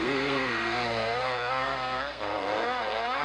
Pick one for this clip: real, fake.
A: fake